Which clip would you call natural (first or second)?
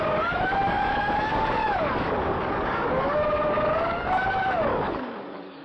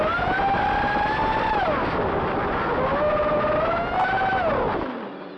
second